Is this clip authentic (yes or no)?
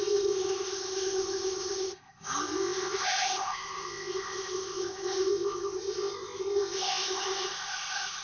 no